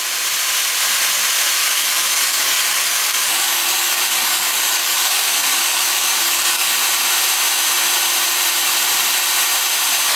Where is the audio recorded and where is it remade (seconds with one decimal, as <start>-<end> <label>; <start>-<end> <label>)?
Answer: 0.0-1.6 recorded; 1.6-6.7 remade; 6.7-10.2 recorded